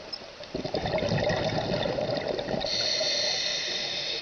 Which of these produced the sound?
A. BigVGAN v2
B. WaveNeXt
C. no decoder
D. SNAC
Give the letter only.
C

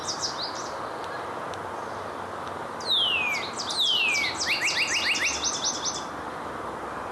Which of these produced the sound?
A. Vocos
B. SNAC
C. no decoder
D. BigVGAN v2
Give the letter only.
C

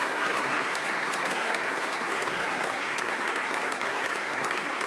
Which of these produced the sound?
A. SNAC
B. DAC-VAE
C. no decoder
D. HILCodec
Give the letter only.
A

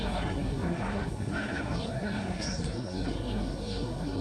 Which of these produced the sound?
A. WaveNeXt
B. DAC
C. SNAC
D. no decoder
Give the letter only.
C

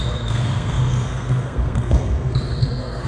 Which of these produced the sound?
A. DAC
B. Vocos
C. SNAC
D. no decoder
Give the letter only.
C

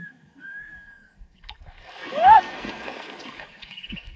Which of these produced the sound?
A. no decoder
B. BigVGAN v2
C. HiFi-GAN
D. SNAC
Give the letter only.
D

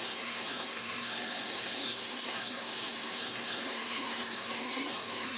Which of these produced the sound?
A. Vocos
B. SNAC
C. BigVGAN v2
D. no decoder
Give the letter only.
B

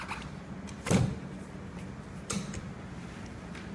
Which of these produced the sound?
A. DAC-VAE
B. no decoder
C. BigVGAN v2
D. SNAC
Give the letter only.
B